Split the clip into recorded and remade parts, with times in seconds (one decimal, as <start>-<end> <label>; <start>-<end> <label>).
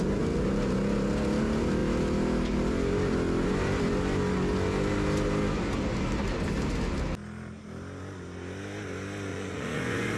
0.0-9.3 recorded; 9.3-10.2 remade